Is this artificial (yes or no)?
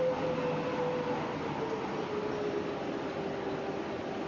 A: no